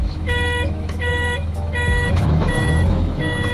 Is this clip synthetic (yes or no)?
yes